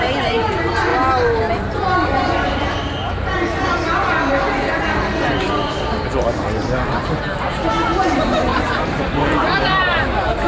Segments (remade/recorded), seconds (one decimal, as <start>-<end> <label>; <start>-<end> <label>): 0.0-8.5 recorded; 8.5-9.0 remade; 9.0-10.5 recorded